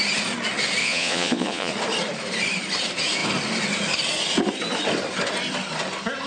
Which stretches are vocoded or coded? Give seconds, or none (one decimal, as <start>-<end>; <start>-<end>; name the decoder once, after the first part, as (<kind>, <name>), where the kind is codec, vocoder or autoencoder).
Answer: 0.8-1.7 (vocoder, Vocos)